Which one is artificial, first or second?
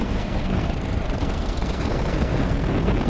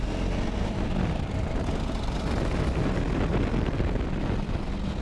first